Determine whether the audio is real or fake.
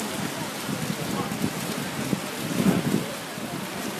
real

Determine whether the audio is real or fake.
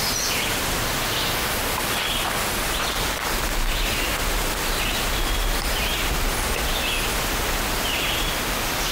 real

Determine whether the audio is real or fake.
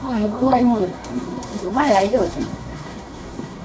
fake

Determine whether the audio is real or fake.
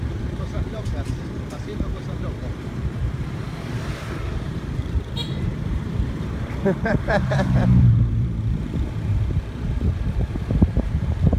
fake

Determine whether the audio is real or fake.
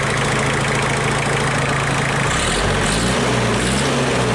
real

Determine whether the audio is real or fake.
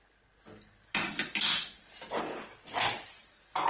real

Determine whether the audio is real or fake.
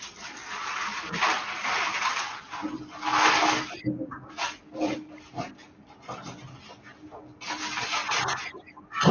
real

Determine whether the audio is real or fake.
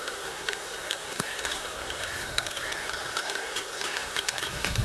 fake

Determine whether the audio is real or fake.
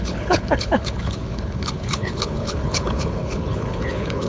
fake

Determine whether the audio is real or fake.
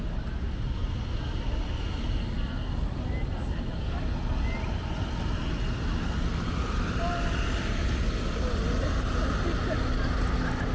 real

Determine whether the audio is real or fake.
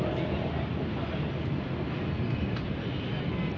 real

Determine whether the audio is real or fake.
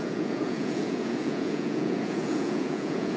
fake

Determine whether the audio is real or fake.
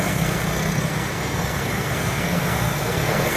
fake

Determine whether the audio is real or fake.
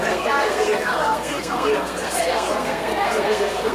fake